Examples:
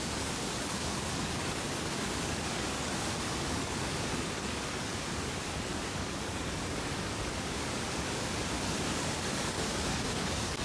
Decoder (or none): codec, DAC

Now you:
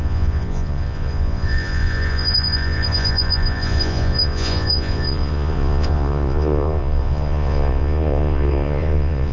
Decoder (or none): vocoder, Vocos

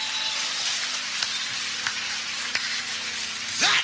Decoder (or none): none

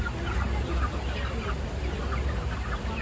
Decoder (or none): none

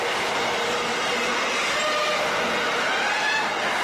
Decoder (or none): none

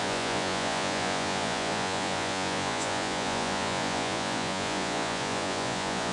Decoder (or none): vocoder, Vocos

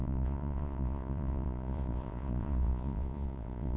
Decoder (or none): vocoder, Vocos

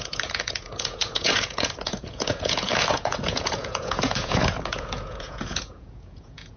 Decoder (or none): vocoder, Vocos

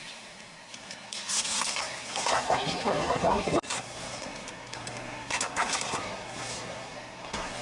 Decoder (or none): codec, SNAC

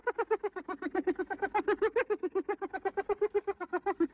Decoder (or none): none